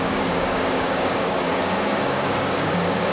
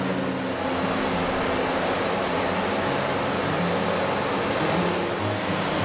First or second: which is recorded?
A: second